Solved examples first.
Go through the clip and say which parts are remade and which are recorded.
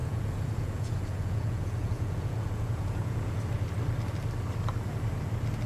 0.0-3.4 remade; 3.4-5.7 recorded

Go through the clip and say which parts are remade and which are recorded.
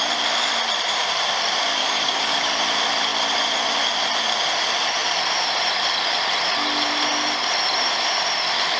0.0-1.8 recorded; 1.8-2.5 remade; 2.5-8.8 recorded